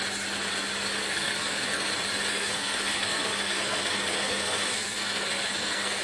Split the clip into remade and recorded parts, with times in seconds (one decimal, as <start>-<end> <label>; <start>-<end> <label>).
0.0-1.0 recorded; 1.0-1.9 remade; 1.9-2.3 recorded; 2.3-6.0 remade